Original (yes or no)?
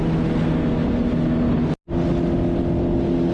yes